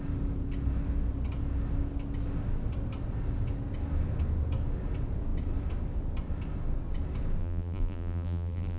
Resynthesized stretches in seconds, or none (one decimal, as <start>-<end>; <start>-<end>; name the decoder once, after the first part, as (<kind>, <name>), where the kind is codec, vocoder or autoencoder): 7.4-8.8 (vocoder, BigVGAN v2)